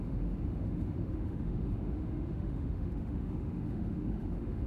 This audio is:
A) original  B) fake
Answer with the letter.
B